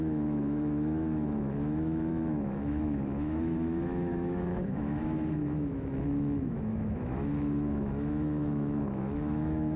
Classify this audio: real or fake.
fake